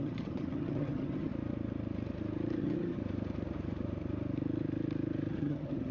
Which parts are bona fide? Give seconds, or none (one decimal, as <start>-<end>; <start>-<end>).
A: 1.3-2.6; 3.0-5.3